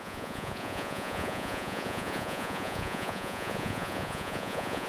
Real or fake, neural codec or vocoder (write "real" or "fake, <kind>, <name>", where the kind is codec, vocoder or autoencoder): fake, vocoder, Vocos